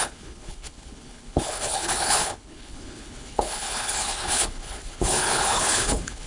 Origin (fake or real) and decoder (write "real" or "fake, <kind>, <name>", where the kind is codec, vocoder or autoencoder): fake, codec, HILCodec